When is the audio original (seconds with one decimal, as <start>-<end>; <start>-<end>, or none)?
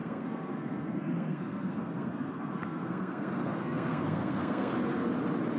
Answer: 4.7-5.6